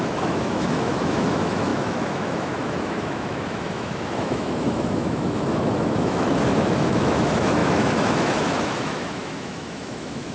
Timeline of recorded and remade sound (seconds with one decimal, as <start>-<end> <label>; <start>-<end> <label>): 0.0-10.3 remade